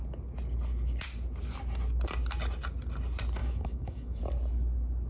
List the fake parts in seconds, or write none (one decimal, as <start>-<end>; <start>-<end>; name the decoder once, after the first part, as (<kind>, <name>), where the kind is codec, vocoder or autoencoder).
3.4-4.2 (autoencoder, DAC-VAE)